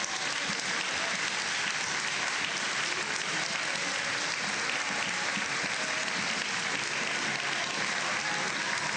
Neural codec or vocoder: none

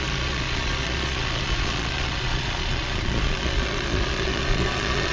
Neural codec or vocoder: vocoder, Vocos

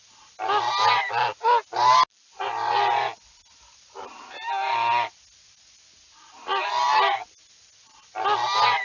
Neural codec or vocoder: none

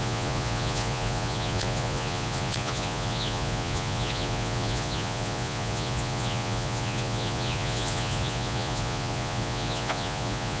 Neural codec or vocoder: vocoder, Vocos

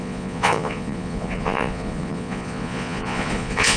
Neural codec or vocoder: vocoder, Vocos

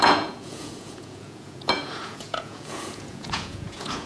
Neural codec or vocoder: vocoder, Vocos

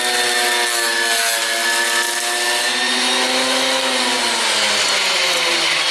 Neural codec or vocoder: none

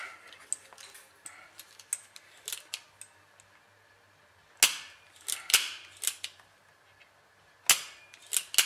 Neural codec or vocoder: none